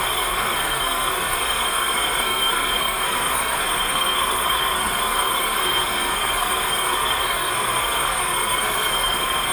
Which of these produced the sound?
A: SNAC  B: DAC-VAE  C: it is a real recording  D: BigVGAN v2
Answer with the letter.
A